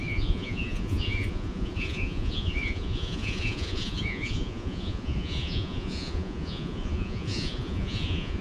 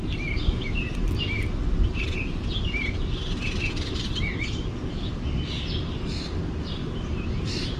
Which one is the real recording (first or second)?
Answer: second